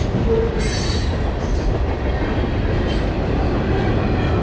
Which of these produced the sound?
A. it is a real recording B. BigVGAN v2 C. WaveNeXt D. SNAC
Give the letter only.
A